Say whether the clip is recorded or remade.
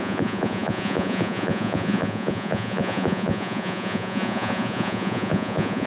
remade